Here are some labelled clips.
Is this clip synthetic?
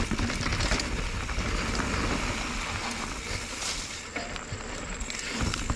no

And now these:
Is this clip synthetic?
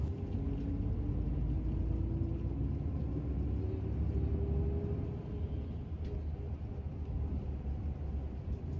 no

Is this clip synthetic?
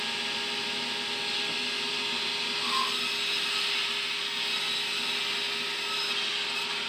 no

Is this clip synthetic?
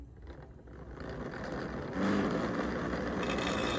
no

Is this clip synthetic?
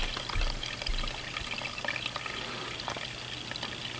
no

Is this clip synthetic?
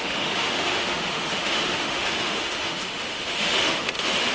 yes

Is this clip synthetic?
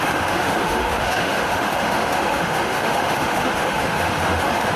yes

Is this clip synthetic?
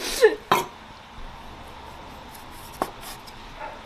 no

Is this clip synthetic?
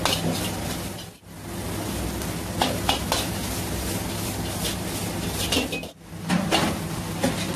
no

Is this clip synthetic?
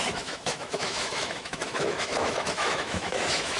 yes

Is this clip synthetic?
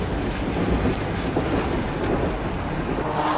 no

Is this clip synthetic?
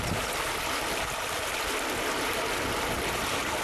no